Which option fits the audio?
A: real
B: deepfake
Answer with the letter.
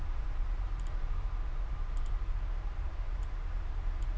B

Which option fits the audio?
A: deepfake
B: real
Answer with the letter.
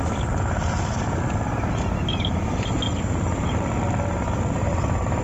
B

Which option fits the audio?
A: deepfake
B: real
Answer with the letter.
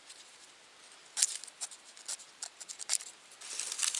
A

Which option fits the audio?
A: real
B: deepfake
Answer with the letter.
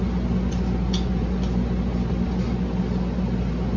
A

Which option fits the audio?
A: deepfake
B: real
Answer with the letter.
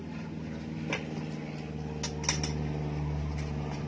B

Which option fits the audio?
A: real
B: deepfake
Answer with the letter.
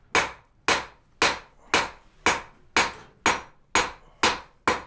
A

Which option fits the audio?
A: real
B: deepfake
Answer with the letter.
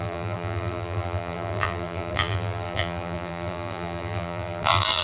B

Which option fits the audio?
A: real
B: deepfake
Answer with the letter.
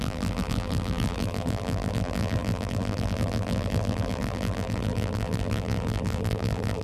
B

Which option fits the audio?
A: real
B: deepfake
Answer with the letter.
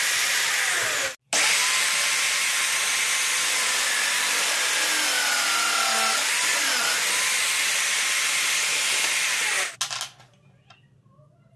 A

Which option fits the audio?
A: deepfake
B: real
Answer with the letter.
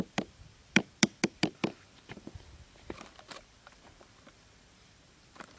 A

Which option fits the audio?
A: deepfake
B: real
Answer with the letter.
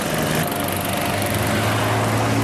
B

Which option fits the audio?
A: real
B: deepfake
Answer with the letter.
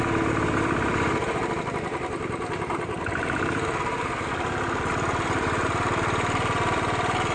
B